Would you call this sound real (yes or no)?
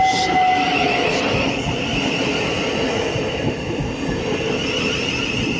yes